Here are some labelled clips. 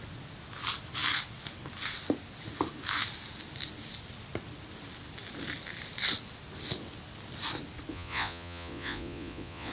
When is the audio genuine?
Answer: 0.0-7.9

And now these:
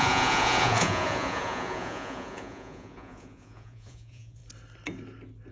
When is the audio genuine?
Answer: 4.4-5.5

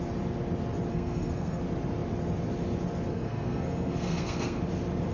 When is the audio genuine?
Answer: 0.0-0.9; 1.6-3.1; 4.6-5.1